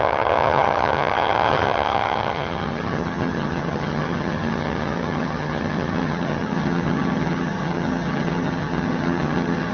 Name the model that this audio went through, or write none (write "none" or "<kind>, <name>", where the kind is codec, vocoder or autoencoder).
vocoder, HiFi-GAN